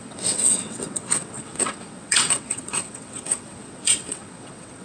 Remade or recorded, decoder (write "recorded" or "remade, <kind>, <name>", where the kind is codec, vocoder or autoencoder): remade, vocoder, WaveNeXt